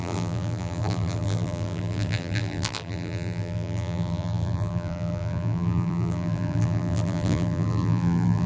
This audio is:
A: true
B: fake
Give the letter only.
B